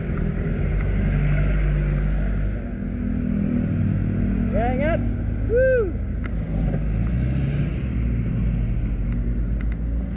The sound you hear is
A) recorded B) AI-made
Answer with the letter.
A